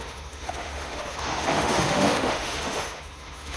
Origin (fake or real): fake